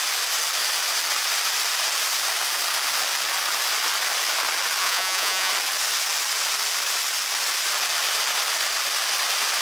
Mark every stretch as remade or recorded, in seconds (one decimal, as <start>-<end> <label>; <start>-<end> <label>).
0.0-4.8 recorded; 4.8-5.5 remade; 5.5-9.6 recorded